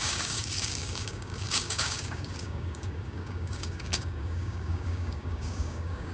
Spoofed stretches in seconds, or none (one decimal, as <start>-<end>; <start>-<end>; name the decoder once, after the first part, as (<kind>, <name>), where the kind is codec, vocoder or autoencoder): 0.0-6.1 (codec, DAC)